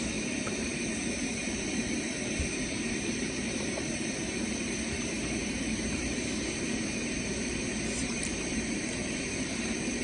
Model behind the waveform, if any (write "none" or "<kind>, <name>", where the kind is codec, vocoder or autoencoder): vocoder, BigVGAN v2